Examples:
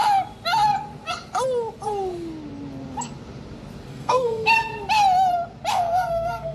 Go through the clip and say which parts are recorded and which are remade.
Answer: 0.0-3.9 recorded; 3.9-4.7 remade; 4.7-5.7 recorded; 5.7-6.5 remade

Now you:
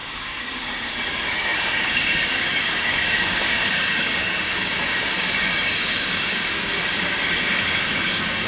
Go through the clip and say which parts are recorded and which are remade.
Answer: 0.0-8.5 remade

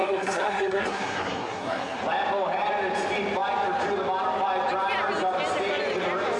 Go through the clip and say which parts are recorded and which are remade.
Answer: 0.0-2.0 remade; 2.0-6.4 recorded